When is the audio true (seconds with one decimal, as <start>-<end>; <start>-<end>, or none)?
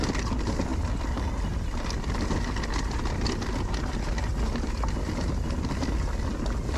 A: 0.0-6.8